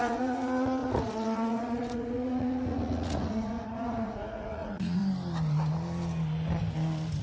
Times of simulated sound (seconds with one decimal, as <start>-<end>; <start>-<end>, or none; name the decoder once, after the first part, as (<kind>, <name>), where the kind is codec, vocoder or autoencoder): 0.0-5.0 (vocoder, Vocos)